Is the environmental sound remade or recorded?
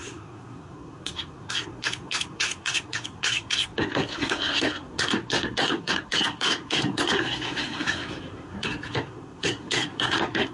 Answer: remade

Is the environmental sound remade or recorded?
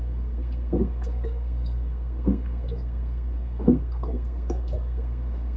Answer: remade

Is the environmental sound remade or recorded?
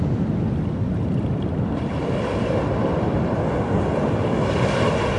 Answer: recorded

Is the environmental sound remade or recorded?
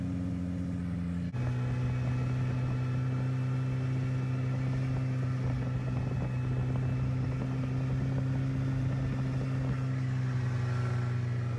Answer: recorded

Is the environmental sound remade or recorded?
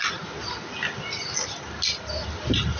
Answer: recorded